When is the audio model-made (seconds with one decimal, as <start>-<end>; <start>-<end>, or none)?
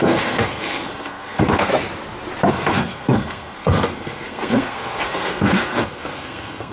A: 0.0-1.7; 2.5-6.7